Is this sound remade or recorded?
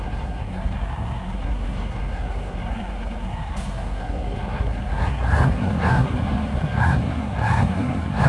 remade